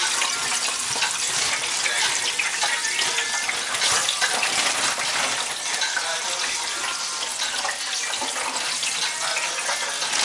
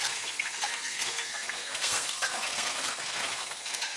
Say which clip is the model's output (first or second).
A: second